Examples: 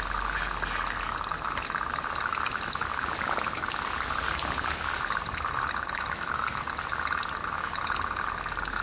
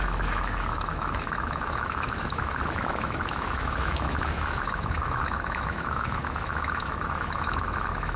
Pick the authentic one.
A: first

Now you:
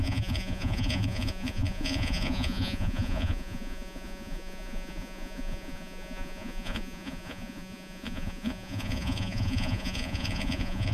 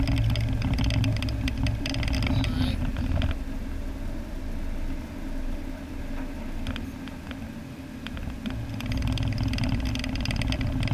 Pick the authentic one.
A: second